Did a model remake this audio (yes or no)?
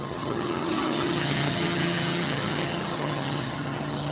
yes